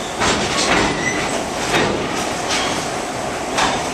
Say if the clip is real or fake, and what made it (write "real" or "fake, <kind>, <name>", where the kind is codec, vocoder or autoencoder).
fake, vocoder, BigVGAN v2